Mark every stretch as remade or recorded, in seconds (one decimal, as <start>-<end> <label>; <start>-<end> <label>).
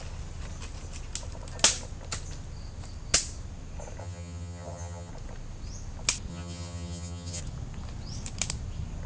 0.0-4.0 recorded; 4.0-5.1 remade; 5.1-6.3 recorded; 6.3-7.4 remade; 7.4-9.1 recorded